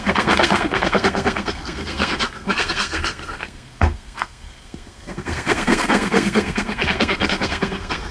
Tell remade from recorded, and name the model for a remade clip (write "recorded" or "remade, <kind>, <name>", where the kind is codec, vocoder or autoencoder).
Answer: remade, codec, SNAC